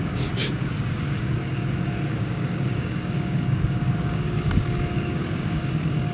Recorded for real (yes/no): no